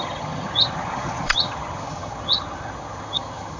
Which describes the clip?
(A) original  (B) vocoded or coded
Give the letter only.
B